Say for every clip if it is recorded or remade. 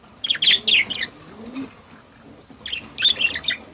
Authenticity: recorded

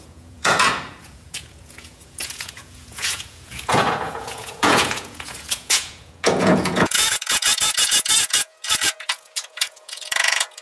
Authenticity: remade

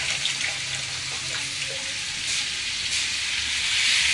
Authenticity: recorded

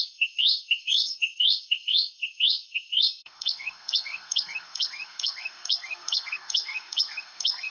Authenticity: remade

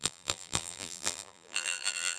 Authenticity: remade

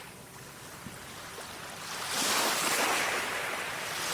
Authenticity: recorded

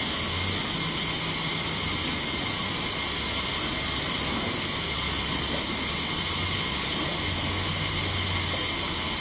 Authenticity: recorded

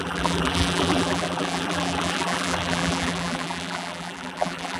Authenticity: remade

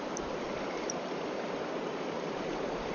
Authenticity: remade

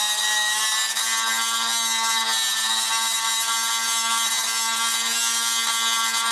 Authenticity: recorded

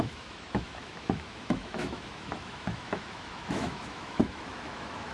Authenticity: remade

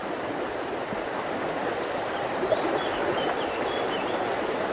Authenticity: recorded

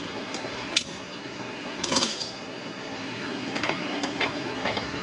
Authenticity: remade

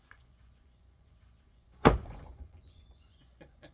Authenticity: remade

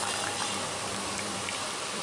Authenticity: remade